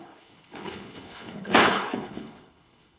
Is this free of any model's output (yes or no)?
no